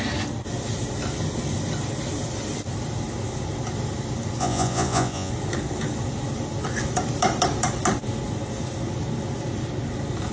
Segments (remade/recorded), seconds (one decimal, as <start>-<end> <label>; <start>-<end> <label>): 0.0-4.4 recorded; 4.4-5.3 remade; 5.3-10.3 recorded